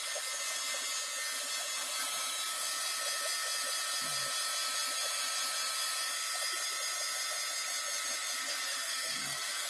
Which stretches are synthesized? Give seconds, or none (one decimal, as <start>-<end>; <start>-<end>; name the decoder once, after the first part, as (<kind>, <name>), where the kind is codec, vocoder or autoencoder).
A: 8.4-9.7 (codec, SNAC)